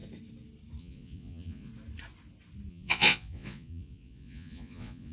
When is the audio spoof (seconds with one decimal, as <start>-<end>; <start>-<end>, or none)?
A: 0.8-1.7; 2.7-5.1